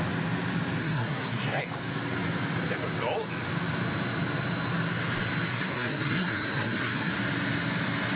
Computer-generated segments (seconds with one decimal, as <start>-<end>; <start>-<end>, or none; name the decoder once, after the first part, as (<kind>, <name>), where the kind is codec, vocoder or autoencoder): 0.8-1.6 (codec, SNAC); 5.5-7.1